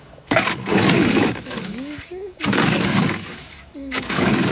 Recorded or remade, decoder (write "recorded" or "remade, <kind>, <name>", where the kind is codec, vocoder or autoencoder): remade, codec, DAC